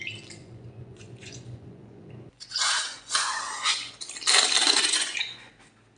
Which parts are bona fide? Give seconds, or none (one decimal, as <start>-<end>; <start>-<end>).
0.0-0.4; 4.0-4.6; 5.5-6.0